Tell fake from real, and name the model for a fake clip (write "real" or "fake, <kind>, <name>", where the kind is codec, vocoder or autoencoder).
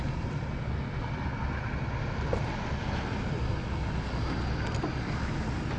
real